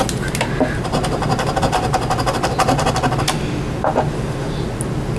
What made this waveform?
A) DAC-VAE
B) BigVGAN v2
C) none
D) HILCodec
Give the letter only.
C